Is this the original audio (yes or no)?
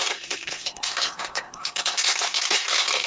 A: no